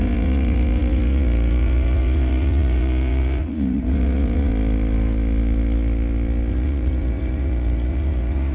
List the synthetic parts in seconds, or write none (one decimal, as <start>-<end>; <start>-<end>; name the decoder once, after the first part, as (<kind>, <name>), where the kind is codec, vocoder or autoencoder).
0.0-4.5 (vocoder, Vocos); 6.5-8.5